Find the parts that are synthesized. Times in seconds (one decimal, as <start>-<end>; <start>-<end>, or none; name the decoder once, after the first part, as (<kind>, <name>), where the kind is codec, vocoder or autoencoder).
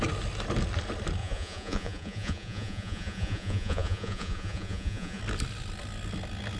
1.2-5.2 (vocoder, Vocos)